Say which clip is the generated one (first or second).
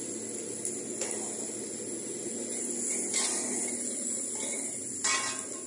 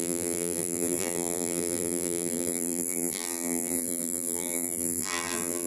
second